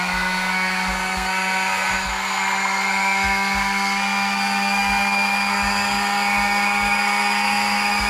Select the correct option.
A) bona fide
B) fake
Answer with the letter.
B